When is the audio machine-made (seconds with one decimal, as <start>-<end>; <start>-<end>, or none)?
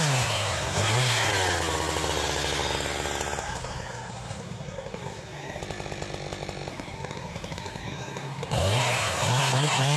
0.0-1.3; 3.4-5.6; 6.7-10.0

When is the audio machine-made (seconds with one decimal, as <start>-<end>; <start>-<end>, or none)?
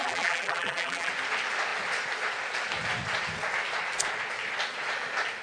0.0-1.1